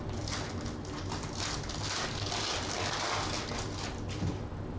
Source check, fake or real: real